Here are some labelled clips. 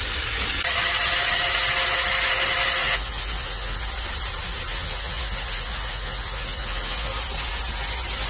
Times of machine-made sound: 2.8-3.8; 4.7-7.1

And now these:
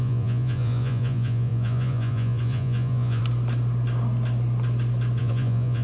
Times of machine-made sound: 0.0-3.2; 5.2-5.8

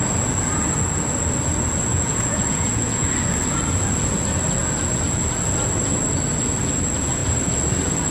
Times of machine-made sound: 1.9-3.0

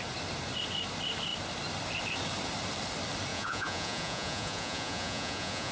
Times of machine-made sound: 3.3-5.7

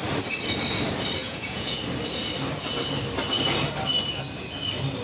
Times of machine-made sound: 1.2-1.8